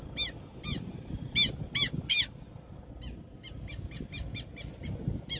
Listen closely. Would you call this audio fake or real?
real